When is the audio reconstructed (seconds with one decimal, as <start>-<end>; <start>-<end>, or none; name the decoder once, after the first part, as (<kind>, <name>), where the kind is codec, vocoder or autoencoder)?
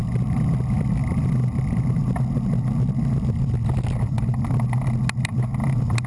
none